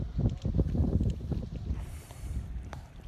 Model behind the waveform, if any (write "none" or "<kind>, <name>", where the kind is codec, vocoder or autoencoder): vocoder, BigVGAN v2